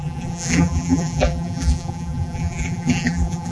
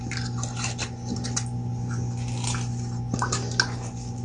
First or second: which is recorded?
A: second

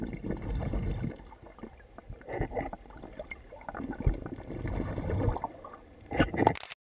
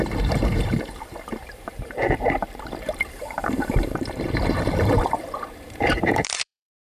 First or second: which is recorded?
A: first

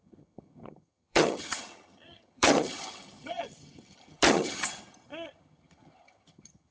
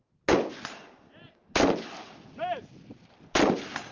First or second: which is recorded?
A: second